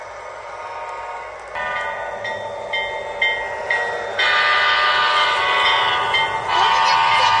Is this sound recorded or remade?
recorded